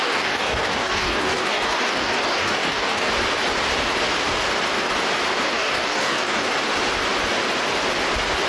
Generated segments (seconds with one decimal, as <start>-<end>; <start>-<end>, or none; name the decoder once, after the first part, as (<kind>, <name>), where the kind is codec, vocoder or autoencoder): 0.0-3.1 (codec, DAC); 5.4-6.5